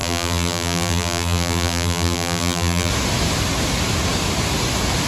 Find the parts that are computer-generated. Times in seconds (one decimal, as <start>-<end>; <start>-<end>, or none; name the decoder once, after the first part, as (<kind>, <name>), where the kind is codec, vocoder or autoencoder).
0.0-2.9 (vocoder, BigVGAN v2)